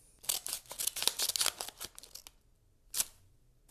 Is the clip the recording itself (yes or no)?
yes